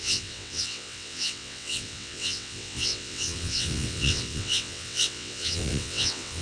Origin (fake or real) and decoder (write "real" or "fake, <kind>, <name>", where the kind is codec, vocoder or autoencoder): fake, vocoder, WaveNeXt